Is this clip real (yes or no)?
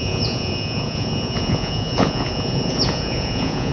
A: no